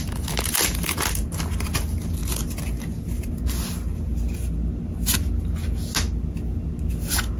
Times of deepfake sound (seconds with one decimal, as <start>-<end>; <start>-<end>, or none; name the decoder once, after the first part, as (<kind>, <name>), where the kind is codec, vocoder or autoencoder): 0.0-4.1 (vocoder, BigVGAN v2)